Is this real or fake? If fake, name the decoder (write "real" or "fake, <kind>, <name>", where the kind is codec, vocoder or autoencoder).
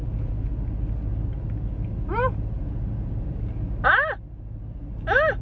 real